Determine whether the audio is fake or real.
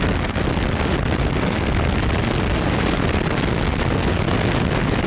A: real